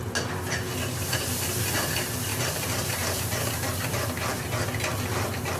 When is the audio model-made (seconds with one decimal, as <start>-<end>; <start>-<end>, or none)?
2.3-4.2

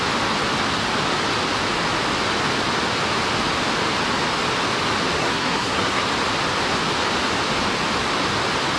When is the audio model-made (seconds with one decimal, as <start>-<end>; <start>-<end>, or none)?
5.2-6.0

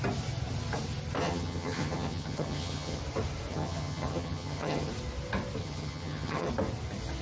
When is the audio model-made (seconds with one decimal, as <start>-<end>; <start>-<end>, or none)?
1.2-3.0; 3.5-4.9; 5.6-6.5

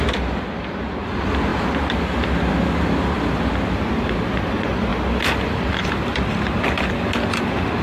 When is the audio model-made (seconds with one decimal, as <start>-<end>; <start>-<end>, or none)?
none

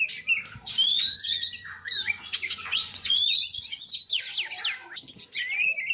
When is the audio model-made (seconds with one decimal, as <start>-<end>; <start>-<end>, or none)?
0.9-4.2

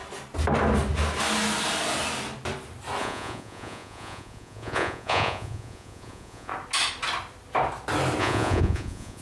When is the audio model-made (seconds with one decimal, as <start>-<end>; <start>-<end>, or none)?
3.0-6.5; 8.2-9.2

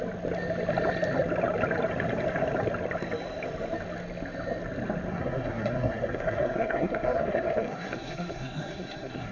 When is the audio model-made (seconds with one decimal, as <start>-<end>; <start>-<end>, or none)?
5.1-9.3